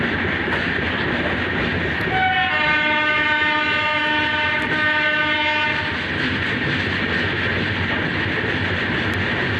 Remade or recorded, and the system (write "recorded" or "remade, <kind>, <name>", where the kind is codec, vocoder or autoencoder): recorded